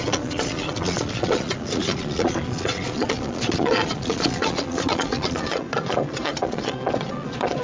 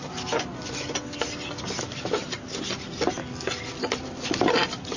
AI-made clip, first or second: first